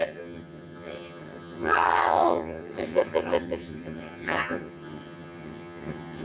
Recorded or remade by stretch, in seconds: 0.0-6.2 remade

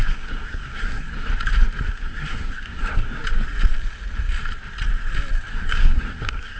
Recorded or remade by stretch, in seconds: 0.0-1.3 remade; 1.3-1.9 recorded; 1.9-3.2 remade; 3.2-5.5 recorded; 5.5-6.6 remade